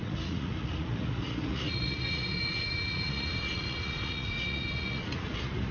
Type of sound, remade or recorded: remade